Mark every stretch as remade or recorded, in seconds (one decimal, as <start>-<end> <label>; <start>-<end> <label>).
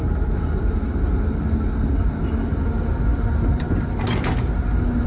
0.0-5.1 recorded